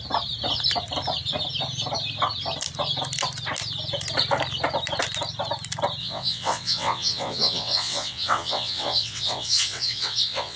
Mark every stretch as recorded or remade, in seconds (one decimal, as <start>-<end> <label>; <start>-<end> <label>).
0.0-6.0 recorded; 6.0-10.6 remade